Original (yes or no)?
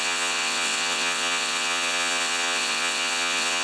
no